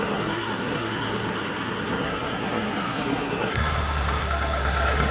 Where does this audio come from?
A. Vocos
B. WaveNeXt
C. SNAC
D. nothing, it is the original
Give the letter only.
C